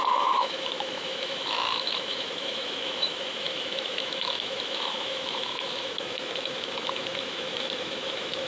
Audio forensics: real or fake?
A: fake